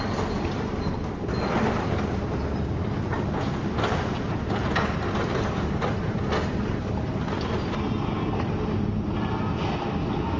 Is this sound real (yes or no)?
yes